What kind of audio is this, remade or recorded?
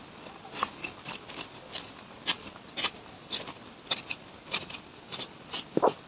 recorded